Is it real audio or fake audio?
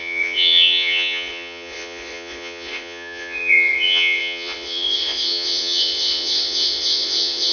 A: fake